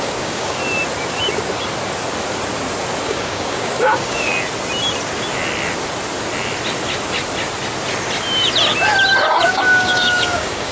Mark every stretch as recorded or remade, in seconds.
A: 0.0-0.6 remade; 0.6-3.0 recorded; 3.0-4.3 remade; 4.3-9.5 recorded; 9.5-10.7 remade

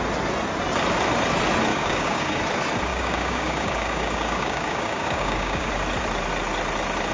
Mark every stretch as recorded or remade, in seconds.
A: 0.0-1.7 recorded; 1.7-2.4 remade; 2.4-2.9 recorded; 2.9-5.7 remade; 5.7-7.1 recorded

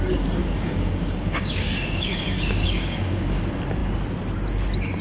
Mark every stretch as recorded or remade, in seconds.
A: 0.0-0.4 recorded; 0.4-3.4 remade; 3.4-5.0 recorded